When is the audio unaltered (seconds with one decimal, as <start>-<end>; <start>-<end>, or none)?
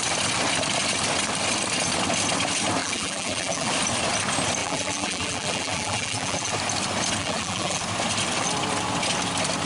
0.0-2.8; 3.7-4.6; 6.5-7.2; 7.8-9.7